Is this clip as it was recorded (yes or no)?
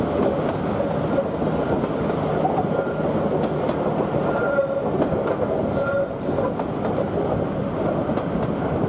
yes